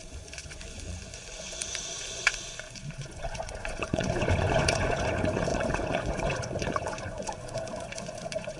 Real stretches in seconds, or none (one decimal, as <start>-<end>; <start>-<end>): none